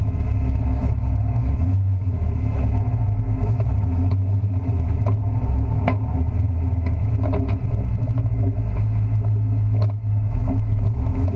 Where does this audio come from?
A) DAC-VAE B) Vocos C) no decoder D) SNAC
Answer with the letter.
A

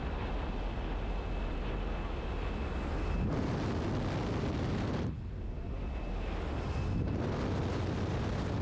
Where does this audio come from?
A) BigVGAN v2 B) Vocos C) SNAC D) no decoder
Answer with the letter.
D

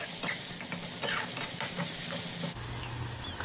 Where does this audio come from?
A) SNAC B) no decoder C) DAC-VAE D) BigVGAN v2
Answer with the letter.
B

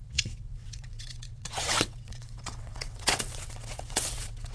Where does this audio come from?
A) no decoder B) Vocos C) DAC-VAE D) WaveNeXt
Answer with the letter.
D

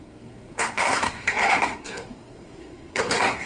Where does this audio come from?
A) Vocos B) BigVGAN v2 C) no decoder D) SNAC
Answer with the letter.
D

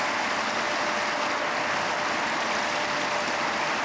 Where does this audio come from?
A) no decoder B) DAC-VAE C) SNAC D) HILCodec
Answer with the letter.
A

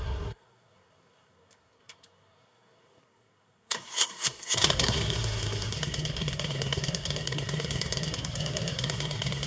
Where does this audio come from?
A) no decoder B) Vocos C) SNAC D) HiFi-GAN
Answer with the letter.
C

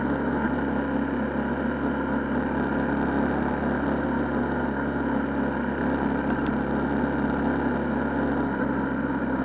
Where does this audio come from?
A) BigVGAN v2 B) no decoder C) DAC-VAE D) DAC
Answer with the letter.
B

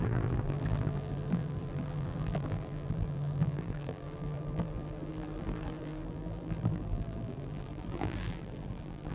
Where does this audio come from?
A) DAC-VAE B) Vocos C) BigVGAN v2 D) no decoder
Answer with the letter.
C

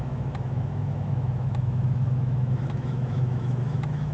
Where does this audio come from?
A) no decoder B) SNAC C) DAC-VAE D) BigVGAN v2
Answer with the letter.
C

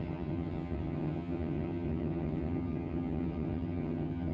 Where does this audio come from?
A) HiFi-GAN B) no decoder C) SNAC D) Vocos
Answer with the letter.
A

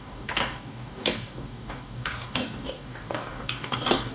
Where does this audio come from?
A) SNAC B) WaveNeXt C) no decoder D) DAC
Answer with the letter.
D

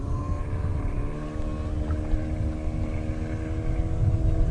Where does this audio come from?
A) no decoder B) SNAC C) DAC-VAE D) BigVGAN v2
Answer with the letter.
A